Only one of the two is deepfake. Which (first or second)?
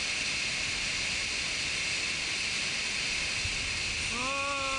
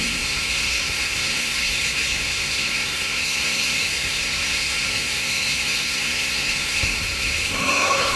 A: second